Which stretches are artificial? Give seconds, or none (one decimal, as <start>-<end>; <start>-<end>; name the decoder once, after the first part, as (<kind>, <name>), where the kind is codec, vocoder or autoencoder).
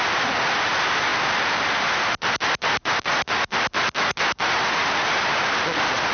none